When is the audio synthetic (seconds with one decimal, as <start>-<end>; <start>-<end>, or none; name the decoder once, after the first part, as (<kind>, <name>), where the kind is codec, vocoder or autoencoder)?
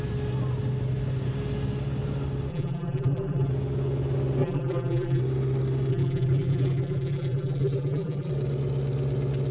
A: 2.5-3.5 (vocoder, BigVGAN v2); 4.4-5.2; 5.9-8.3